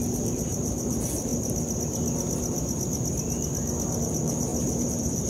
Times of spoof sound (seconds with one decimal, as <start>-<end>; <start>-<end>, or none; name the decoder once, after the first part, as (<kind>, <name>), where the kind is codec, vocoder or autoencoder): 0.0-1.3 (vocoder, BigVGAN v2); 4.0-5.3